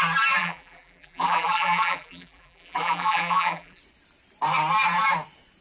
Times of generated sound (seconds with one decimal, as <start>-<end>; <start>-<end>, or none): 0.4-3.8